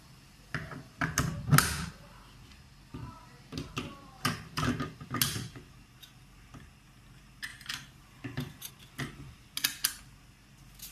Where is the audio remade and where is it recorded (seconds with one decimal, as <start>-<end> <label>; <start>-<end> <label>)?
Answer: 0.0-7.5 recorded; 7.5-8.7 remade; 8.7-10.9 recorded